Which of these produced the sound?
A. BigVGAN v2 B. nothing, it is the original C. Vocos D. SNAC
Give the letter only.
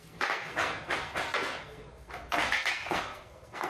D